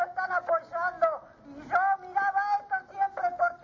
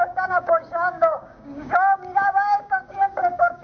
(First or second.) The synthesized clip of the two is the second